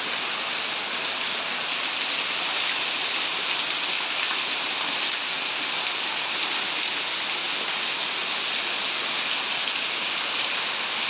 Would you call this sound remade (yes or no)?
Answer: no